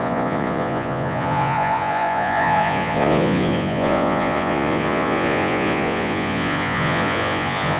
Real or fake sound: fake